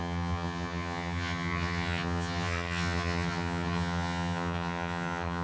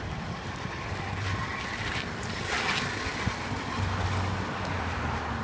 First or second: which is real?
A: second